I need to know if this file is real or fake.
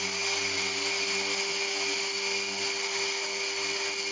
real